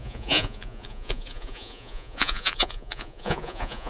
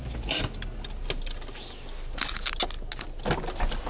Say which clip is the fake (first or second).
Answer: first